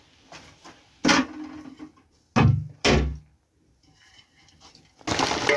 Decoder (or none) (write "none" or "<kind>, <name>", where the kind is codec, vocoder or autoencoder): none